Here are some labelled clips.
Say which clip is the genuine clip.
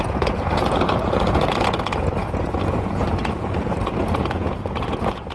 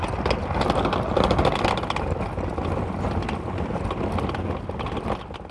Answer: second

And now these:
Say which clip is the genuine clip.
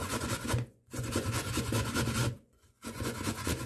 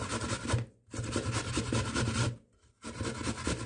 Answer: second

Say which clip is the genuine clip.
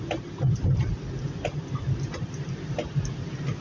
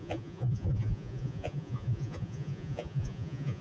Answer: first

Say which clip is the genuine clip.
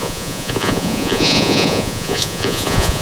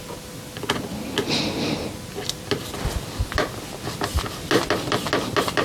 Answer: second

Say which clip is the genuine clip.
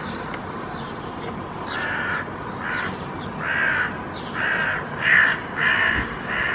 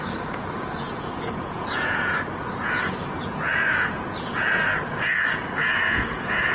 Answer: first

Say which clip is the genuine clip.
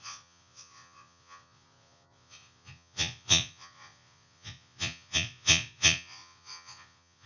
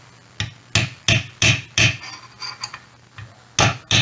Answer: second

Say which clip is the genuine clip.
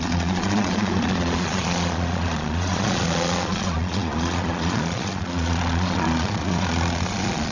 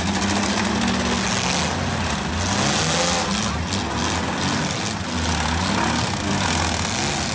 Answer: second